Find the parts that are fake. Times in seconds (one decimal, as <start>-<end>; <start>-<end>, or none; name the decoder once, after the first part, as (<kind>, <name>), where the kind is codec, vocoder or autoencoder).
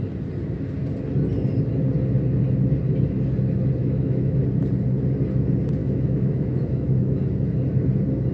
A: 3.8-4.4 (autoencoder, DAC-VAE); 5.8-7.2